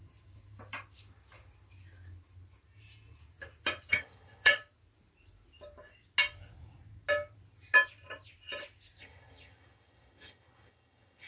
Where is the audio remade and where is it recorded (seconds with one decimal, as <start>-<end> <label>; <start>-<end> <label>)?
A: 0.0-3.9 recorded; 3.9-4.6 remade; 4.6-9.0 recorded; 9.0-11.3 remade

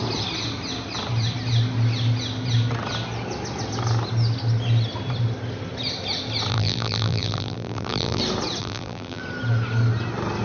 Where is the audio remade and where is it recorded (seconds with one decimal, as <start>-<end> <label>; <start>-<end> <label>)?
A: 0.0-6.5 recorded; 6.5-8.2 remade; 8.2-8.6 recorded; 8.6-9.2 remade; 9.2-10.4 recorded

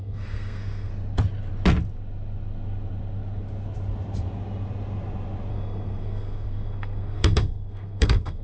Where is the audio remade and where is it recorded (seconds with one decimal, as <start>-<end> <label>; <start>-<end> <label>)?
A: 0.0-0.9 remade; 0.9-5.5 recorded; 5.5-8.4 remade

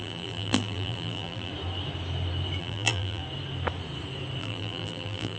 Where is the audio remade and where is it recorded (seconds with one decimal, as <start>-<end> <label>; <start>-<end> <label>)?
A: 0.0-1.5 remade; 1.5-2.6 recorded; 2.6-3.2 remade; 3.2-4.4 recorded; 4.4-5.4 remade

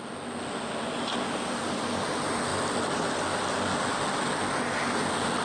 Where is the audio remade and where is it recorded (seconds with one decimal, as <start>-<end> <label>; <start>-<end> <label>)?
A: 0.0-5.4 recorded

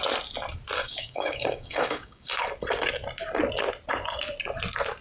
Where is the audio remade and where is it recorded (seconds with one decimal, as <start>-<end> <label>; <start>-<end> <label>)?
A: 0.0-0.8 recorded; 0.8-2.3 remade; 2.3-5.0 recorded